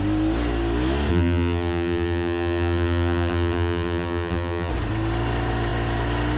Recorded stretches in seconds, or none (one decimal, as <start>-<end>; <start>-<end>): 0.0-1.1; 4.7-6.4